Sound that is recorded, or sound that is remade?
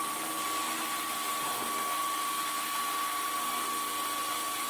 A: recorded